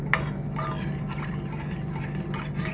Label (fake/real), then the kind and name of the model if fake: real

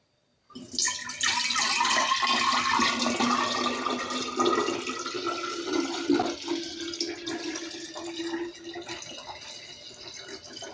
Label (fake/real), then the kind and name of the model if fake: real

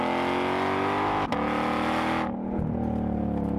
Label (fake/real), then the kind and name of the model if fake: real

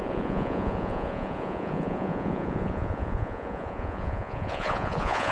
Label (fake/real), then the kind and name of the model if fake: fake, vocoder, Vocos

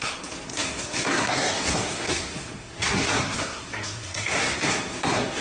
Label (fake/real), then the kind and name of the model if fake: fake, codec, SNAC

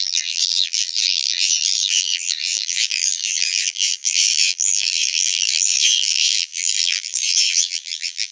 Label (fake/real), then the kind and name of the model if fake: fake, vocoder, BigVGAN v2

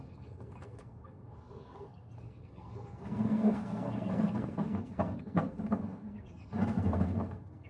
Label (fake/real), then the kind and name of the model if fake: fake, codec, SNAC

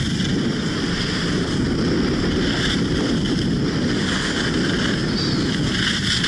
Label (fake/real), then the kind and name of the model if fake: real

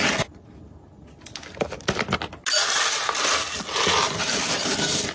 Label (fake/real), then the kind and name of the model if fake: real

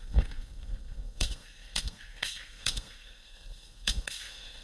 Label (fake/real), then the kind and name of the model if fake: fake, codec, SNAC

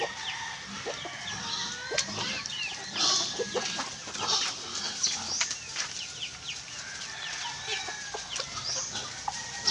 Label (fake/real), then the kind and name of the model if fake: real